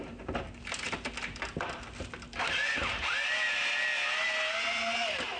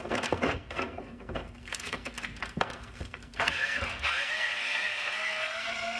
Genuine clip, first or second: first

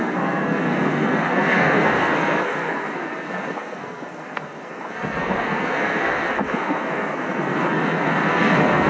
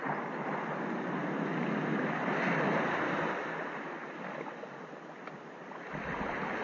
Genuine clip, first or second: second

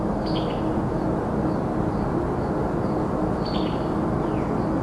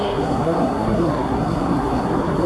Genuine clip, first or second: first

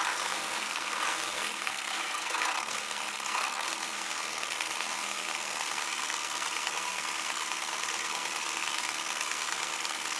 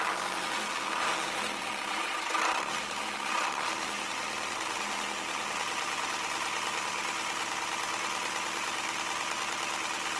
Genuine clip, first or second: second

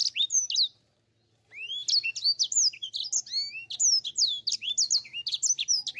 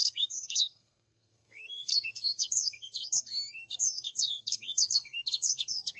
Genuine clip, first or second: first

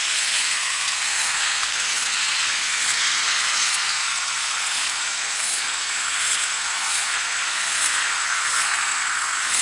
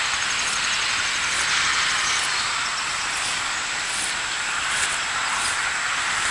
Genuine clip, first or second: second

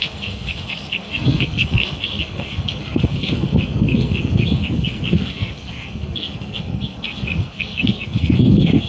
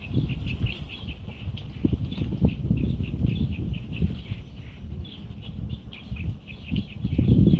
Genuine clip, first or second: second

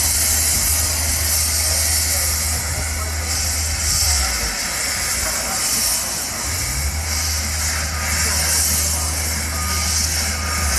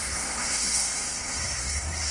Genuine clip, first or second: first